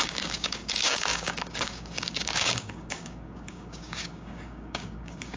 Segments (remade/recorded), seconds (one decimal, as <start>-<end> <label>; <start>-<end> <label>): 0.0-5.4 remade